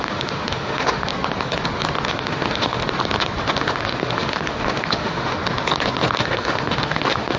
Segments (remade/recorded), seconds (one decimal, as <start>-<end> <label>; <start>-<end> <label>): 0.0-1.1 remade; 1.1-2.1 recorded; 2.1-2.8 remade; 2.8-3.6 recorded; 3.6-5.4 remade; 5.4-6.2 recorded; 6.2-7.4 remade